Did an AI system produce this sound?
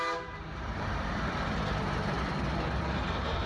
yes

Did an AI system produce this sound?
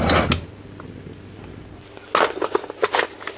no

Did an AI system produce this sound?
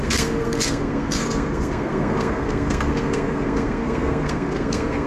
yes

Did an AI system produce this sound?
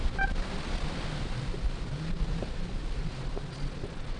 no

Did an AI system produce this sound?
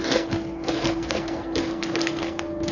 yes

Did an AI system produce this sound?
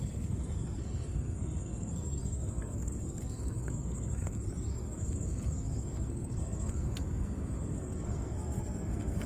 yes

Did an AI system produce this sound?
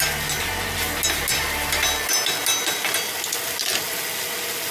no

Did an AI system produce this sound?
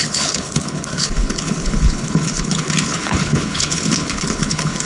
yes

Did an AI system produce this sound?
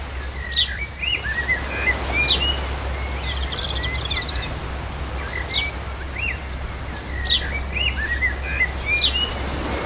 no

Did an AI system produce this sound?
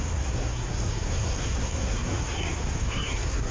yes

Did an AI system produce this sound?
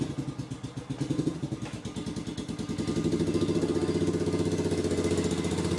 no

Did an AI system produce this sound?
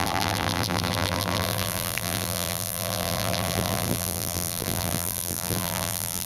yes